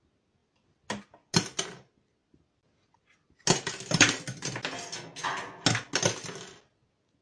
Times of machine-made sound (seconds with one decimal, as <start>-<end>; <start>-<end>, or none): none